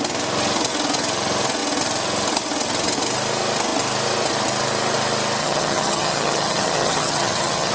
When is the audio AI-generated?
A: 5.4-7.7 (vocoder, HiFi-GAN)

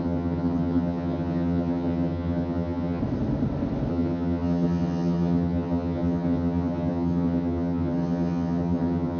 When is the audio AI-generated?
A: 0.0-3.0 (vocoder, HiFi-GAN); 3.9-9.2

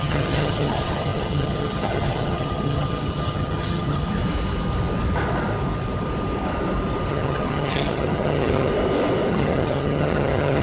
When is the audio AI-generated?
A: 0.0-4.2 (vocoder, HiFi-GAN); 7.1-8.7; 9.3-10.6